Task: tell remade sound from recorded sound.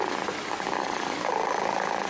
recorded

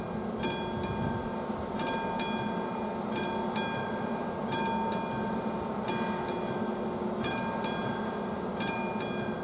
recorded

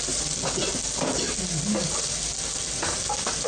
recorded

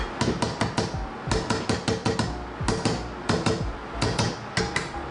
recorded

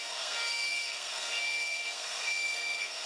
remade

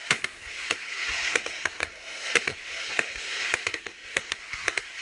remade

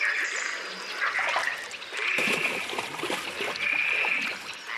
recorded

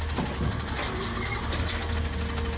recorded